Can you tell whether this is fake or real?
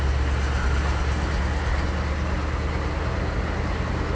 real